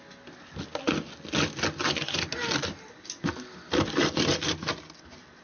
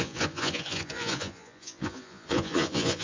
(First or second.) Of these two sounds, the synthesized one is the second